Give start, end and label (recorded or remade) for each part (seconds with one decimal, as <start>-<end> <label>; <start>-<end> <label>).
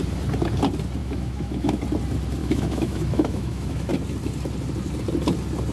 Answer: 0.0-1.0 recorded; 1.0-1.8 remade; 1.8-2.4 recorded; 2.4-3.9 remade; 3.9-5.7 recorded